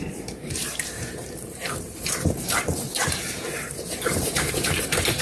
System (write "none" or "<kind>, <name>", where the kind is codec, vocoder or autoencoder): vocoder, BigVGAN v2